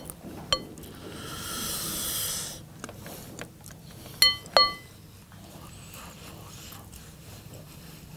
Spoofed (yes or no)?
no